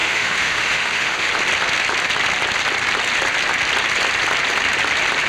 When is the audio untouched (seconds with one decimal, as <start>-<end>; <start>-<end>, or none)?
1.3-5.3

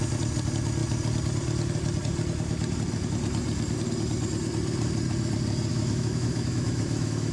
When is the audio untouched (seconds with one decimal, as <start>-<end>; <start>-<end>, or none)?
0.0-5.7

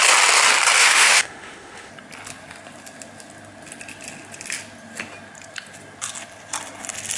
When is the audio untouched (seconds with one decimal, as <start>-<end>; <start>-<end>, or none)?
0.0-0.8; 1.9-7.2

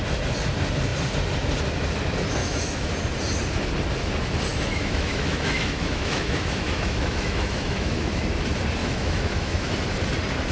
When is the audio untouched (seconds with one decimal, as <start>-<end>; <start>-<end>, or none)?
0.0-2.4; 2.9-4.5; 8.2-8.8; 9.7-10.5